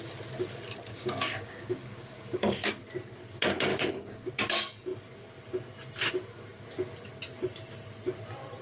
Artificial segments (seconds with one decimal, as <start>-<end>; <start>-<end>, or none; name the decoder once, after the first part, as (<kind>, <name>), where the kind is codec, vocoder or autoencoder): 0.9-2.7 (codec, DAC); 3.7-4.3